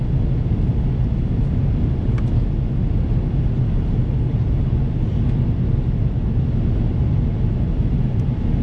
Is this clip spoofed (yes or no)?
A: no